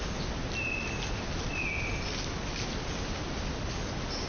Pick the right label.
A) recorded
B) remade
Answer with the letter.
A